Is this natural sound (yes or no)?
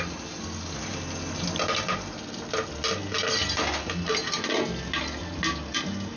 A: yes